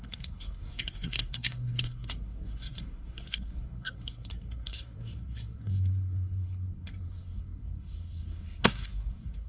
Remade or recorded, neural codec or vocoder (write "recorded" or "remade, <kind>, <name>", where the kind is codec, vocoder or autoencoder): remade, codec, SNAC